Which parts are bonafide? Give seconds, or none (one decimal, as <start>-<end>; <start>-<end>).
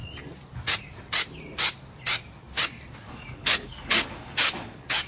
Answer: 0.0-3.1